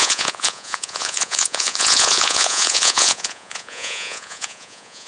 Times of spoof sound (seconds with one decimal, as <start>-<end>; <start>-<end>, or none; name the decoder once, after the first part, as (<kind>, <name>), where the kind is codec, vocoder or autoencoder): 0.0-5.1 (vocoder, Vocos)